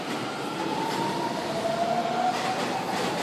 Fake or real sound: real